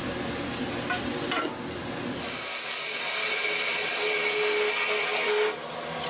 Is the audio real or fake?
real